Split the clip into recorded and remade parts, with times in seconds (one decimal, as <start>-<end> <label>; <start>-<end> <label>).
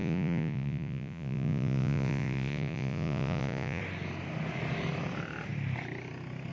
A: 0.0-3.8 remade; 3.8-6.5 recorded